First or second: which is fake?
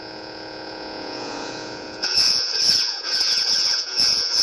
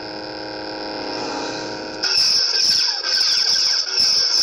first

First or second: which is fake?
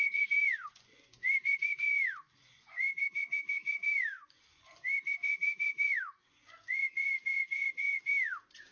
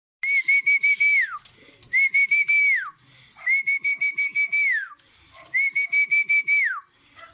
first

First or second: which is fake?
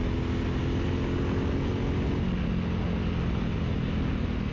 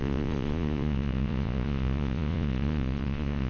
second